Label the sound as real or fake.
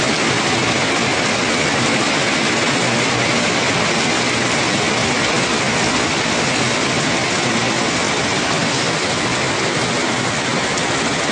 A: real